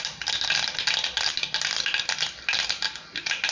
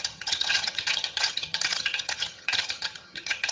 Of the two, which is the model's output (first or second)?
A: second